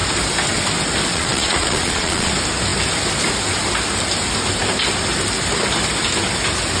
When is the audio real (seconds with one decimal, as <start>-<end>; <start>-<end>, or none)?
0.0-1.1; 2.3-6.8